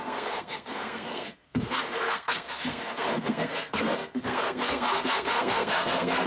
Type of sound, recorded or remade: remade